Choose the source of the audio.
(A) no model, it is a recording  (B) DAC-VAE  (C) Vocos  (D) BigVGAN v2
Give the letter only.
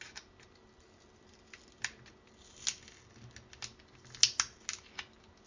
A